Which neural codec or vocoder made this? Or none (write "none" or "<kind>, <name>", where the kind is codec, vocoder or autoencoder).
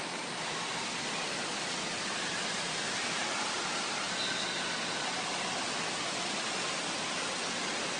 none